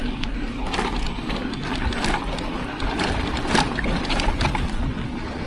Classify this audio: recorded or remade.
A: recorded